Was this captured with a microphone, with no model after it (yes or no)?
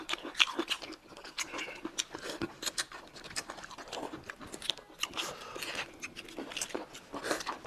yes